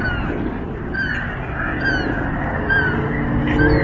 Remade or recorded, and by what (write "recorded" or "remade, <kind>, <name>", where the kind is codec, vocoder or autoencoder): recorded